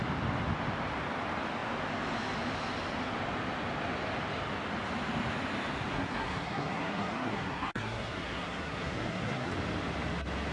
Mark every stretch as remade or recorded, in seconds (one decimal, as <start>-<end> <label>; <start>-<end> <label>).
0.0-5.9 recorded; 5.9-9.5 remade; 9.5-10.5 recorded